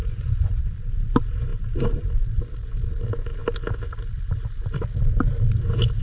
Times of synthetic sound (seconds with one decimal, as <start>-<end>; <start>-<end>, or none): 0.0-0.6